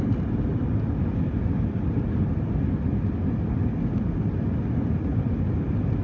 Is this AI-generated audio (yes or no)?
no